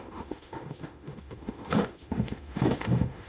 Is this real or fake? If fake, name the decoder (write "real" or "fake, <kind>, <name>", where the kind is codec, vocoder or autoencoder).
fake, autoencoder, DAC-VAE